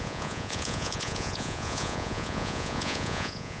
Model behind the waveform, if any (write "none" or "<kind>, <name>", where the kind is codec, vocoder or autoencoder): vocoder, Vocos